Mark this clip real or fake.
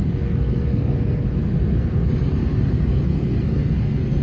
fake